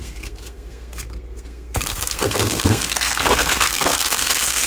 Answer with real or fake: fake